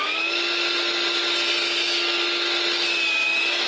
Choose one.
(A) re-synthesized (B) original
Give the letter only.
B